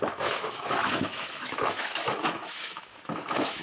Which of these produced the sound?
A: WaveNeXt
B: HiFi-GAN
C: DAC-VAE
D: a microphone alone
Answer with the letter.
C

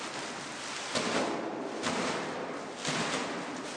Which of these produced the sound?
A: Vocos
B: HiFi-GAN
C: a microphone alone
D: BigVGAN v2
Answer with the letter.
C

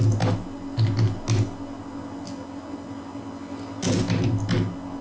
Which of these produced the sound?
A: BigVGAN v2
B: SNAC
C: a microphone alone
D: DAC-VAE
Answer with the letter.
C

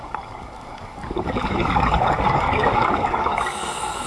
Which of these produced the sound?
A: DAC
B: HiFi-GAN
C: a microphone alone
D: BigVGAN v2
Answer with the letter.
A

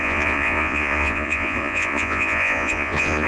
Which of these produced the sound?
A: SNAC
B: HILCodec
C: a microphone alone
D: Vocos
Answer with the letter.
D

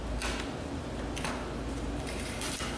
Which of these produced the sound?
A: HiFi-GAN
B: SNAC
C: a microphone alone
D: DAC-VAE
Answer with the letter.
C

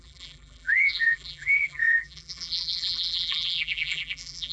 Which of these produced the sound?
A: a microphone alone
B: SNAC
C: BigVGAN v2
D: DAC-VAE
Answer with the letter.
C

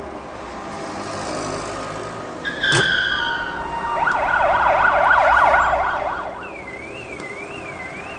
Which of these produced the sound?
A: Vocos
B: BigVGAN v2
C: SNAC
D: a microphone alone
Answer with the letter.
D